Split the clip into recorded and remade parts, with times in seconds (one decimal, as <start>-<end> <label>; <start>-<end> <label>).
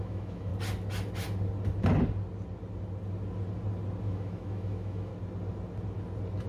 0.0-0.5 remade; 0.5-4.0 recorded; 4.0-5.1 remade; 5.1-6.5 recorded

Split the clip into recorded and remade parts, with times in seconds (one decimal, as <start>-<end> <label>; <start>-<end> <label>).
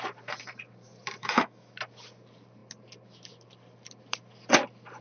0.0-1.2 recorded; 1.2-1.7 remade; 1.7-5.0 recorded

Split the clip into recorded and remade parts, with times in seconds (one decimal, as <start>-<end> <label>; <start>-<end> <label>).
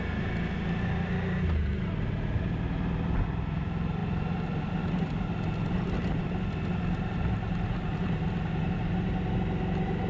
0.0-10.1 recorded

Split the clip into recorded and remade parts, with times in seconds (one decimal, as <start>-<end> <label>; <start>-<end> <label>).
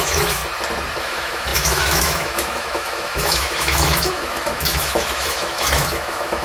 0.0-0.4 remade; 0.4-1.0 recorded; 1.0-6.4 remade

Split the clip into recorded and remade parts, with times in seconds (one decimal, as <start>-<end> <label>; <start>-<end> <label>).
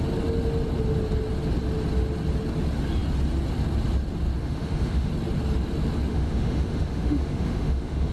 0.0-4.4 recorded; 4.4-5.1 remade; 5.1-6.1 recorded; 6.1-8.1 remade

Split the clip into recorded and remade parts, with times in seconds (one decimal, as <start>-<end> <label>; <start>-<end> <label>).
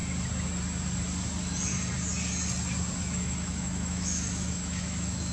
0.0-3.0 recorded; 3.0-5.3 remade